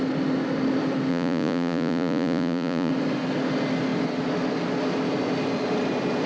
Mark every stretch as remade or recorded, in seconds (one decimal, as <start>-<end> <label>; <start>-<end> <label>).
0.0-1.1 recorded; 1.1-2.9 remade; 2.9-6.3 recorded